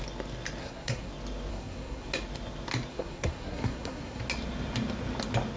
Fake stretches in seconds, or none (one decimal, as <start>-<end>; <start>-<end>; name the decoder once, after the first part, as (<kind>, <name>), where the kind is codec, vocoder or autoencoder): 0.6-1.1 (codec, SNAC); 1.5-2.1; 2.9-4.2